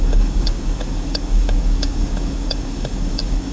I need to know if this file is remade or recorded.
remade